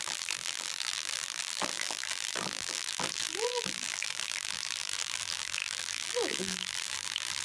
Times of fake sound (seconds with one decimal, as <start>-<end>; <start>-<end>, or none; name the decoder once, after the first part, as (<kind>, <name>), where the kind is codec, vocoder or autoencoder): 0.0-7.4 (vocoder, BigVGAN v2)